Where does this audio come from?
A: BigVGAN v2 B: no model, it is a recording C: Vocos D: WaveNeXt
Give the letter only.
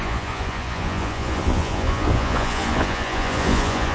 C